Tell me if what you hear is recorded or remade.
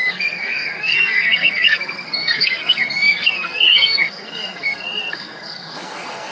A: remade